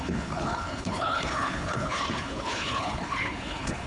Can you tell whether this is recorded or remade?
remade